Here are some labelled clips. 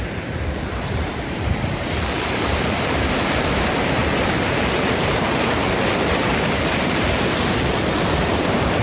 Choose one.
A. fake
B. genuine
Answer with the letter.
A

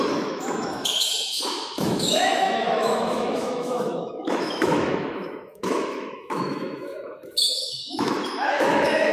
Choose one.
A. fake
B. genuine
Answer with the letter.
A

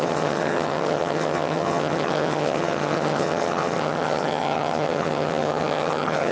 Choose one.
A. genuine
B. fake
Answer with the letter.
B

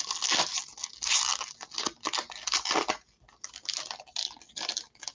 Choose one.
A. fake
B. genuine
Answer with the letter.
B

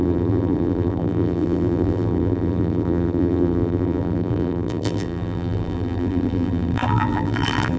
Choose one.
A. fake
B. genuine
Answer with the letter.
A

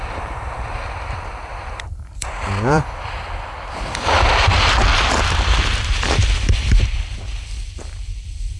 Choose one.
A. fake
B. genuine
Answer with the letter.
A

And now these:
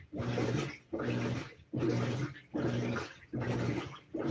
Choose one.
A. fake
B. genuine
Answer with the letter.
B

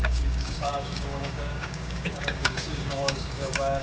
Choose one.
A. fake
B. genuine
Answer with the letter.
A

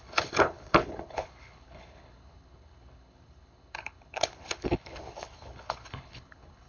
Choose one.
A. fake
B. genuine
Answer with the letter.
A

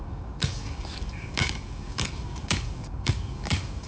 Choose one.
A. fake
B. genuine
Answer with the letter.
A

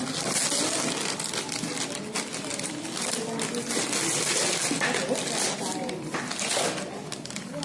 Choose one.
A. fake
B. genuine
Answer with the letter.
B